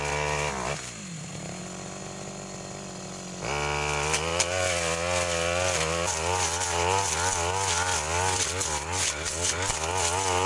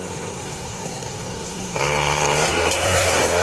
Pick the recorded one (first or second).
first